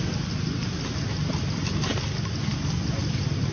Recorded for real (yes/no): yes